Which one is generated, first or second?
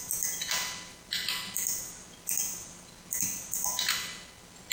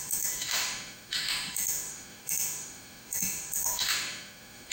second